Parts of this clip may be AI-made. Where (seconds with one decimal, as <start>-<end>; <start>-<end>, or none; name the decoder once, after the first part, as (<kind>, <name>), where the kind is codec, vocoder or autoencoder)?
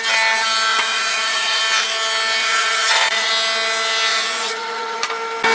0.7-1.6 (vocoder, Vocos); 2.4-3.3; 4.1-5.0